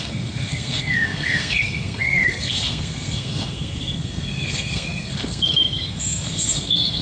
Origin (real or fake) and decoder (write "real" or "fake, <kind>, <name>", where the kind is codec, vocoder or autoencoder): fake, codec, SNAC